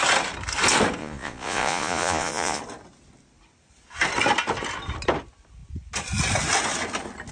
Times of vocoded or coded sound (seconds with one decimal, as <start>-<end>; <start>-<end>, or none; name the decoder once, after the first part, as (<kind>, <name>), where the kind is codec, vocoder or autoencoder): 1.0-2.6 (vocoder, Vocos)